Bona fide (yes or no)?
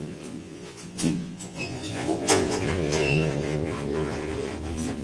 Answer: no